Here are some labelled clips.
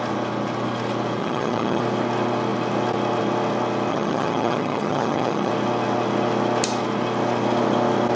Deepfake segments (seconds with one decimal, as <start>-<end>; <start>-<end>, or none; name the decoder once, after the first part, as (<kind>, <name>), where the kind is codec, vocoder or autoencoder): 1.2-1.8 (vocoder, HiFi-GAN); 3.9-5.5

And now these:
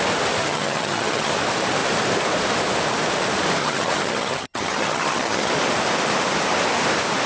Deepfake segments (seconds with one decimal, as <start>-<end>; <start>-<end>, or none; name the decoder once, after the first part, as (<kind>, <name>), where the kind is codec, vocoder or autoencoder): 0.4-1.3 (vocoder, HiFi-GAN); 3.6-5.5

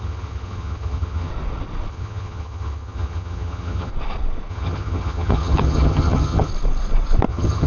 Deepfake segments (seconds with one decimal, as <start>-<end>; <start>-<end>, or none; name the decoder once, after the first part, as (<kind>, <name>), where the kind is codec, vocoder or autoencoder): 0.0-1.3 (vocoder, HiFi-GAN); 1.9-3.9; 4.5-6.5; 7.3-7.7

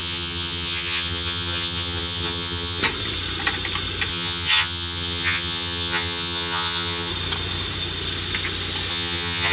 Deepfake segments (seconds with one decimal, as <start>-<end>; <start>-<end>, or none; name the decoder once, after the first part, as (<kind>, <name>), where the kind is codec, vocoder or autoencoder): 0.0-2.8 (vocoder, HiFi-GAN); 4.1-7.1; 8.9-9.5